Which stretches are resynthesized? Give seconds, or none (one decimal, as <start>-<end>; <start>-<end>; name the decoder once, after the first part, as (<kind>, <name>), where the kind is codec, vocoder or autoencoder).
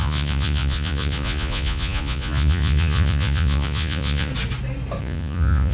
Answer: 0.0-4.3 (vocoder, Vocos); 5.0-5.7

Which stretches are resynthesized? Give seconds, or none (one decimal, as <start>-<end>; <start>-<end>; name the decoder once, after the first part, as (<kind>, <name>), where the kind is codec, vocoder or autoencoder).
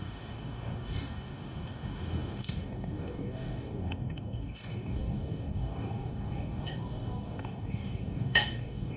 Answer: 0.0-9.0 (codec, DAC)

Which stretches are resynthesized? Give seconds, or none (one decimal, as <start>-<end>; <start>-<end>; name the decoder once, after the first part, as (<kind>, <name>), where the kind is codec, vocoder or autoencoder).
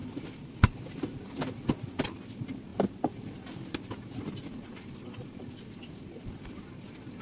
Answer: 0.0-1.1 (vocoder, BigVGAN v2); 2.7-7.2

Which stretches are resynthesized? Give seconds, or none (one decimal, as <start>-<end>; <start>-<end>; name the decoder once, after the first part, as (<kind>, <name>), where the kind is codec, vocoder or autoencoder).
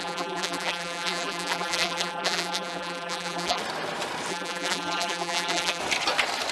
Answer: 0.0-3.6 (vocoder, BigVGAN v2); 4.3-5.8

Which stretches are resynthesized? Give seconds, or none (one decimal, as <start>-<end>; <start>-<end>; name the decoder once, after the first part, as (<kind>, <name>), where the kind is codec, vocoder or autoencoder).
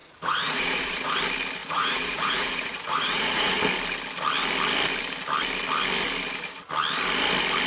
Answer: 0.0-1.2 (vocoder, Vocos); 1.6-3.6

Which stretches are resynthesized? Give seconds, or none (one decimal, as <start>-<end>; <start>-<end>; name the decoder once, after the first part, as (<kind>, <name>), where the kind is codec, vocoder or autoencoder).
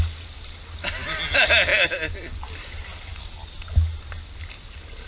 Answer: none